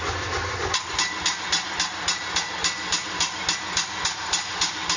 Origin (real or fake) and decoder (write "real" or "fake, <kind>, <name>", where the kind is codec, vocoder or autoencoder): real